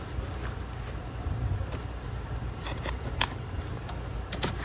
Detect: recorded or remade recorded